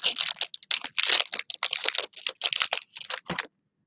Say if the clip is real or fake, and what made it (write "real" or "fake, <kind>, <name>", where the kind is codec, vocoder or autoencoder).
real